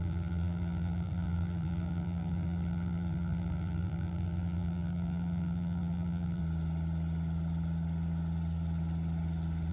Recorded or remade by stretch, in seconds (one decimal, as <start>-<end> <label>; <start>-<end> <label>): 0.0-6.4 remade; 6.4-9.7 recorded